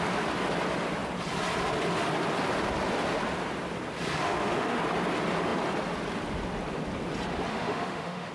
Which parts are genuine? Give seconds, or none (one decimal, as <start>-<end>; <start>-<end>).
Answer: 0.0-4.2; 4.8-7.5